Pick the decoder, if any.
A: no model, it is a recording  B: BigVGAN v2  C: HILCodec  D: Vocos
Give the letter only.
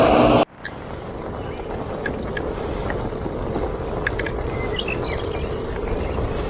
A